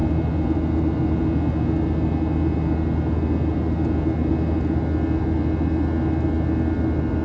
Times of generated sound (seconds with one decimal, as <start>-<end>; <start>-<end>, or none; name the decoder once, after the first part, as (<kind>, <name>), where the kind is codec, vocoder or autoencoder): none

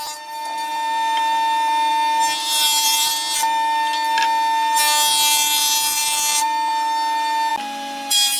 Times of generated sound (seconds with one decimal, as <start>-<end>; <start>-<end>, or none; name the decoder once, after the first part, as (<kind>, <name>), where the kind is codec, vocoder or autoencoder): 2.4-3.1 (vocoder, BigVGAN v2)

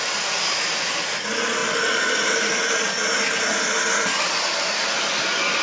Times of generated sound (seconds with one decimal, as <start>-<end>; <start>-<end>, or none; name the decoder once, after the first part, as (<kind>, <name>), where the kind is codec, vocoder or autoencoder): none

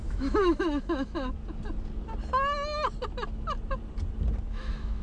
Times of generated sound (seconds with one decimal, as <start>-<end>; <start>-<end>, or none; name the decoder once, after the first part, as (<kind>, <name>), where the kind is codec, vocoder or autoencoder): 0.0-1.4 (autoencoder, DAC-VAE); 4.4-5.0